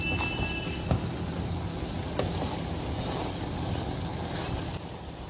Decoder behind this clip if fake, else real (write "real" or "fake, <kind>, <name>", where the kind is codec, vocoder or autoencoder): real